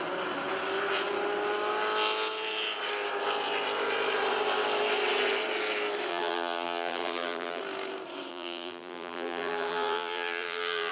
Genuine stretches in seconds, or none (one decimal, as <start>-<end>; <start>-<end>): 0.0-6.1; 7.6-8.3